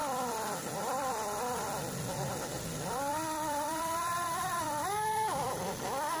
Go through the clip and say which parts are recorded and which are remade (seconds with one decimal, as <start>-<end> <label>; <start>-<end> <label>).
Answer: 0.0-3.1 recorded; 3.1-5.5 remade; 5.5-6.2 recorded